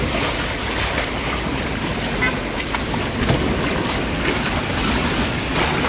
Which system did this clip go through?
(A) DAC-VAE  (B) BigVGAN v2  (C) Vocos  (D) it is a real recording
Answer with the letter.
D